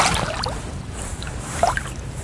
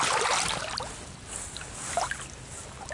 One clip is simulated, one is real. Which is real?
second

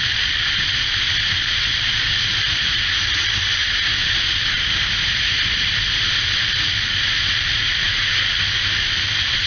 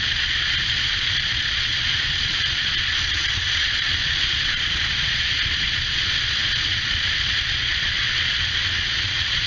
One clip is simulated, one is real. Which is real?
first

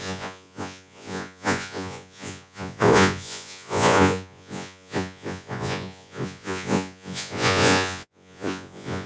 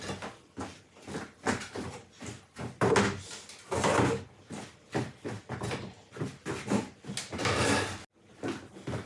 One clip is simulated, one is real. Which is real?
second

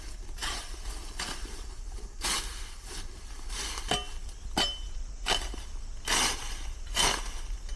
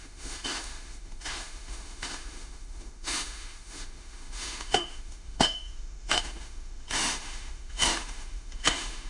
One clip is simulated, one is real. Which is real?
first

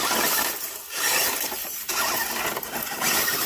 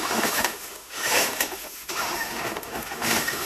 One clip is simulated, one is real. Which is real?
first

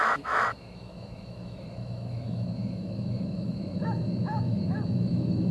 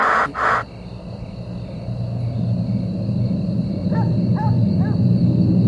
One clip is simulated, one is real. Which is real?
second